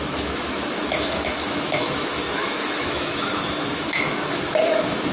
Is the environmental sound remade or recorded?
remade